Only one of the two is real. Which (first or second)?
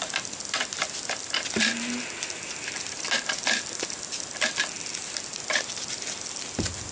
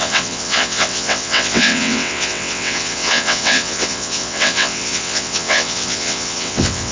first